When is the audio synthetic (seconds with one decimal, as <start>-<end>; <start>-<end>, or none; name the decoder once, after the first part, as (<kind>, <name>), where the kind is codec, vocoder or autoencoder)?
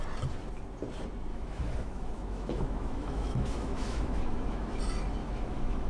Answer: 1.3-4.8 (autoencoder, DAC-VAE); 5.2-5.9